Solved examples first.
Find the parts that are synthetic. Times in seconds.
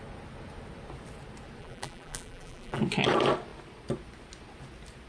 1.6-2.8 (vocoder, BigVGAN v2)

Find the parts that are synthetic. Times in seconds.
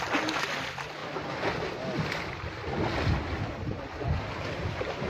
none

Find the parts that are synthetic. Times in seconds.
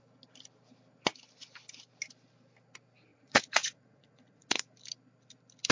3.1-4.5 (vocoder, Vocos)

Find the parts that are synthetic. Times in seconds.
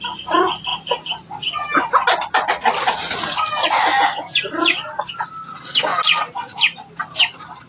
none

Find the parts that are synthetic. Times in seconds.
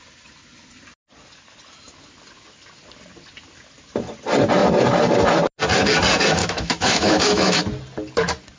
6.4-7.6 (autoencoder, DAC-VAE)